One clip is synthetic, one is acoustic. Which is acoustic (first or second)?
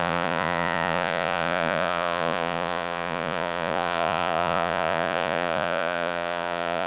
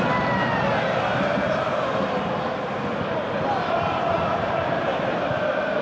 second